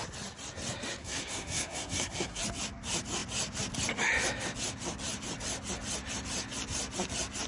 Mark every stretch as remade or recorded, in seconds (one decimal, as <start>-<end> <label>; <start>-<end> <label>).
0.0-1.0 recorded; 1.0-2.4 remade; 2.4-7.5 recorded